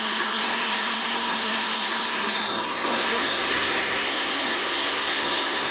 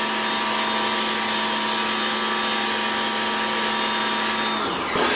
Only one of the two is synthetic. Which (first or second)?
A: first